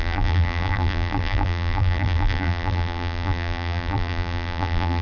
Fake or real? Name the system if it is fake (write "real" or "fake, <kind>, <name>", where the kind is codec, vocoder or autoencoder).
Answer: fake, vocoder, BigVGAN v2